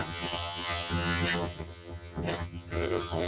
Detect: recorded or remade remade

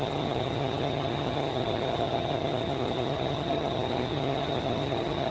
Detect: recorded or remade remade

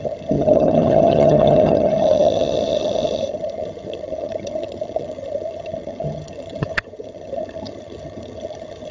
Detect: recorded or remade remade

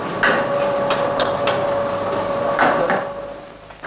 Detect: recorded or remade recorded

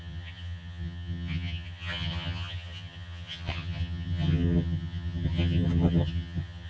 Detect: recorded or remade remade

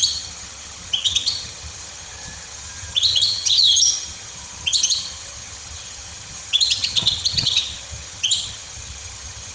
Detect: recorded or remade remade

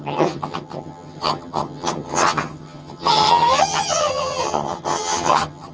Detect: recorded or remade remade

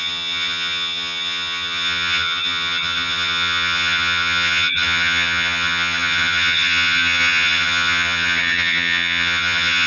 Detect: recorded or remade remade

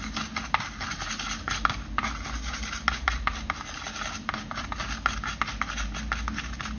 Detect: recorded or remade recorded